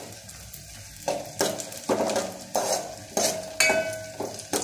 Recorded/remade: recorded